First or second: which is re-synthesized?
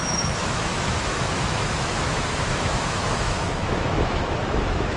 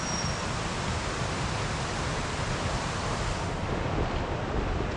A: first